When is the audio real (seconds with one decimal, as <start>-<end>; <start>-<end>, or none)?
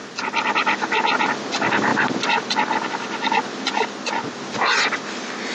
0.0-5.5